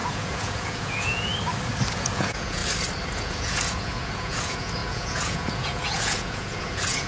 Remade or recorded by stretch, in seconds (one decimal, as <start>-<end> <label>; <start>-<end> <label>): 0.0-1.3 remade; 1.3-1.9 recorded; 1.9-2.6 remade; 2.6-3.1 recorded; 3.1-7.1 remade